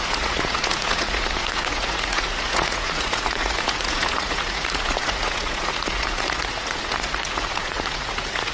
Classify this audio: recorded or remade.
remade